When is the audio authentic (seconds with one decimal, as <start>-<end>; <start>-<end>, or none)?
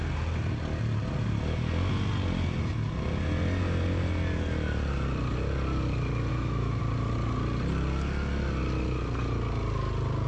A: 0.0-6.3; 6.8-10.3